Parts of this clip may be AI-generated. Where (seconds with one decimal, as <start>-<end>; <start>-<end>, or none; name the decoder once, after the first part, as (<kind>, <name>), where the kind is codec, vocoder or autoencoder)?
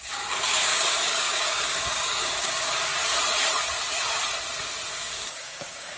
0.0-2.9 (codec, DAC); 4.9-6.0